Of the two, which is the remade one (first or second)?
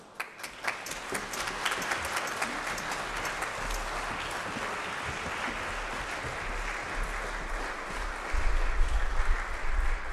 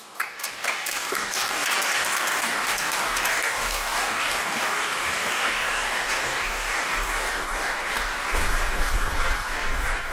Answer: second